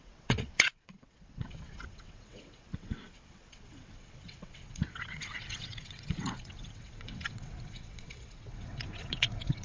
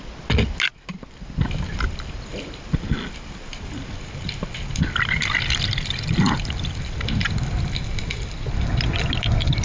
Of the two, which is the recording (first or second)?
second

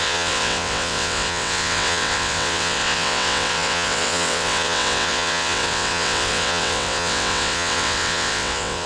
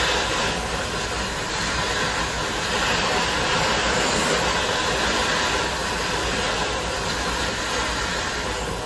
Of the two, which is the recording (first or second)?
second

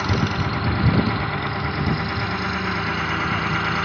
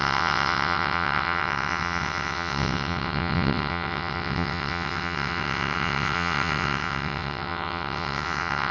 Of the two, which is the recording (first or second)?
first